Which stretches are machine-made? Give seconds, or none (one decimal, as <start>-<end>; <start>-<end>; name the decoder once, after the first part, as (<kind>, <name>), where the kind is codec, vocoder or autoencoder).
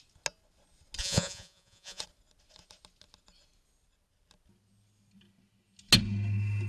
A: 1.0-2.0 (vocoder, Vocos)